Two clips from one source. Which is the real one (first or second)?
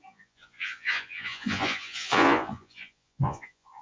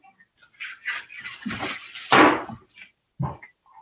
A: second